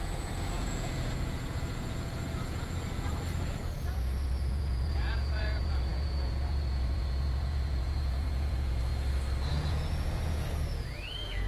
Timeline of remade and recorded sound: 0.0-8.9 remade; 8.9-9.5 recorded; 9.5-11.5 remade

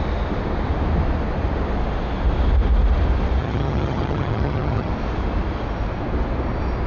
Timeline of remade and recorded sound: 0.0-3.4 recorded; 3.4-4.9 remade; 4.9-6.9 recorded

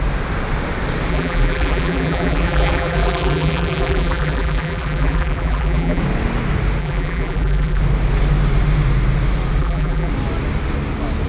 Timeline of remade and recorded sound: 0.0-1.1 recorded; 1.1-6.0 remade; 6.0-6.8 recorded; 6.8-7.8 remade; 7.8-9.6 recorded; 9.6-10.1 remade; 10.1-11.3 recorded

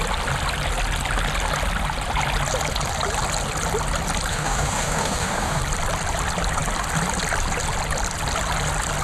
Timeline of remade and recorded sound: 0.0-4.3 recorded; 4.3-5.6 remade; 5.6-9.0 recorded

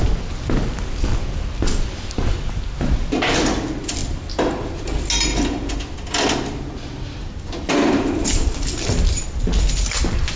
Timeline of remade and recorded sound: 0.0-10.4 recorded

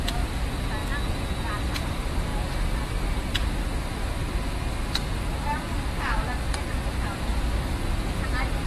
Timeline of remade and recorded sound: 0.0-8.7 recorded

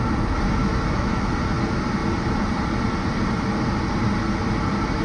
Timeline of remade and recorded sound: 0.0-0.6 recorded; 0.6-1.3 remade; 1.3-5.0 recorded

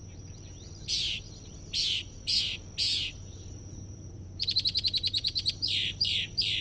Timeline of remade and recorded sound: 0.0-2.4 remade; 2.4-2.9 recorded; 2.9-6.6 remade